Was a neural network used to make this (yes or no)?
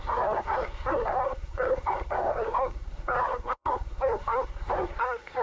yes